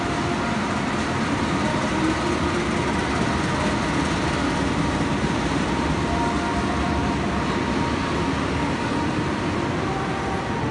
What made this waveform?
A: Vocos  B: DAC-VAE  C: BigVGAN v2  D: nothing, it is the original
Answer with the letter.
D